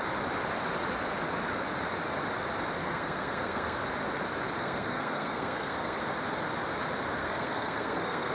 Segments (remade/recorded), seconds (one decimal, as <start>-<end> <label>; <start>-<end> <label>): 0.0-2.8 recorded; 2.8-3.8 remade; 3.8-4.6 recorded; 4.6-6.0 remade; 6.0-7.2 recorded; 7.2-8.3 remade